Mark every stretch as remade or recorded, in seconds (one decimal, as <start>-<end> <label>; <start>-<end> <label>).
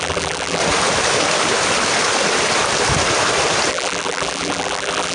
0.0-0.6 remade; 0.6-3.7 recorded; 3.7-5.1 remade